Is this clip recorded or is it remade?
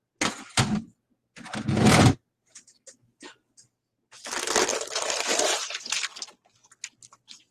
recorded